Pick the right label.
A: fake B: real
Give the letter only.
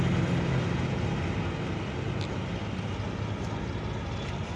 B